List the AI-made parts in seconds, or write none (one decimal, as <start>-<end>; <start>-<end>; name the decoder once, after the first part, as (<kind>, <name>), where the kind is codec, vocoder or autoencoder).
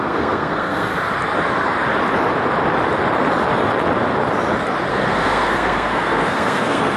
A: 0.0-0.9 (codec, SNAC); 4.9-7.0